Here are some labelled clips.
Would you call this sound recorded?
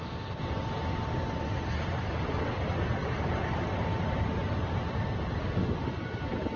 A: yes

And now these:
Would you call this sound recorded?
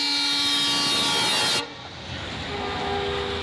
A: yes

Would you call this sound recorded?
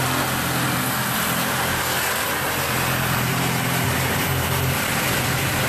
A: yes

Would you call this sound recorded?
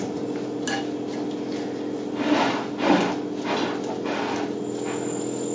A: yes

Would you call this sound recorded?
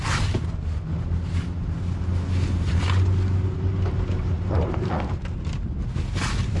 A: yes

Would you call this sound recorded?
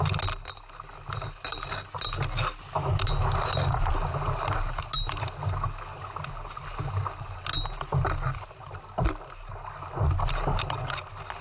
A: yes